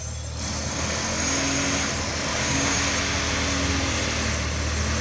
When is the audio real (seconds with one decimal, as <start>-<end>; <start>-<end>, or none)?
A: 0.0-2.3; 2.8-5.0